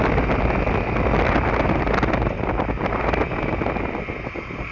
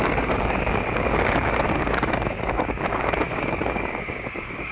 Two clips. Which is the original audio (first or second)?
first